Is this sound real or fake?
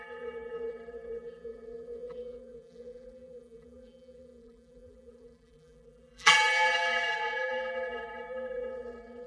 fake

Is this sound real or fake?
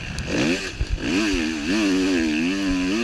real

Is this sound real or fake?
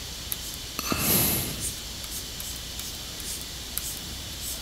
fake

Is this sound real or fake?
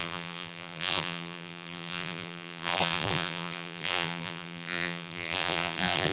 fake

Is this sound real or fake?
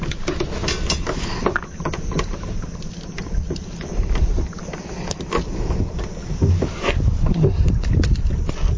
real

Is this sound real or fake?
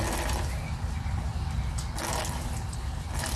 real